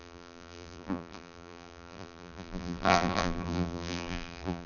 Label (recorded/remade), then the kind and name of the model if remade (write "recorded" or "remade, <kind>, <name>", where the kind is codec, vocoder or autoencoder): remade, vocoder, BigVGAN v2